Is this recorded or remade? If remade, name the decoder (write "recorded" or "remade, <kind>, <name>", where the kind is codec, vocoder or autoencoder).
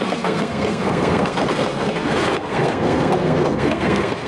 remade, codec, SNAC